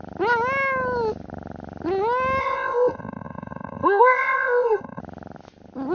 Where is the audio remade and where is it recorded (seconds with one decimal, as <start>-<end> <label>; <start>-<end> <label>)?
0.0-2.4 recorded; 2.4-5.0 remade; 5.0-5.9 recorded